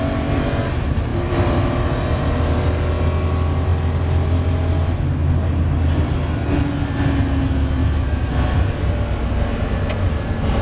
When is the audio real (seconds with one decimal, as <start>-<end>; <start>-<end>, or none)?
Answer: 0.0-1.1; 1.6-7.8; 8.3-10.6